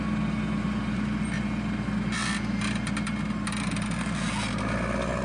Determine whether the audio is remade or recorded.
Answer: recorded